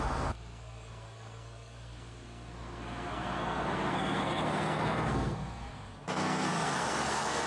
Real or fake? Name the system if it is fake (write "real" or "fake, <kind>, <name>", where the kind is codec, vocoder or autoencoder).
fake, codec, SNAC